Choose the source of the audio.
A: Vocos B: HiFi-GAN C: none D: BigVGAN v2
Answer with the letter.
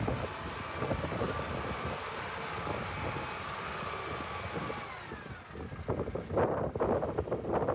C